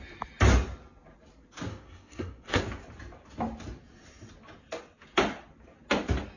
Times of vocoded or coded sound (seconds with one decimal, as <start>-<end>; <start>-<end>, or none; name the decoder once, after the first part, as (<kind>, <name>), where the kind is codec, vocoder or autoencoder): 1.7-2.6 (codec, SNAC)

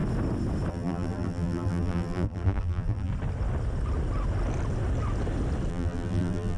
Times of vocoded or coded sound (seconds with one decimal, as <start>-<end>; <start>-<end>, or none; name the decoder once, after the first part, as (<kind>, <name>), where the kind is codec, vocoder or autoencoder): 0.7-3.1 (vocoder, BigVGAN v2); 5.7-6.6

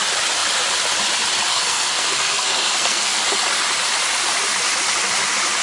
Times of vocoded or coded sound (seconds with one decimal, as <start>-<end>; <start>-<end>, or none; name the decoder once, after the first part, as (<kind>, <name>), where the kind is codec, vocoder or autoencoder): 1.5-3.2 (codec, SNAC)

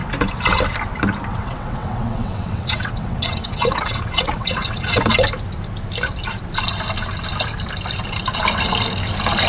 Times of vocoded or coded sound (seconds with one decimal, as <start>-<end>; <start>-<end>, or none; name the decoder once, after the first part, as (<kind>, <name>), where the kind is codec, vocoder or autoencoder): 1.3-5.0 (vocoder, WaveNeXt)